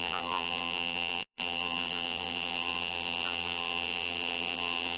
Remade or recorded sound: remade